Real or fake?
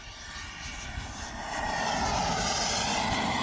real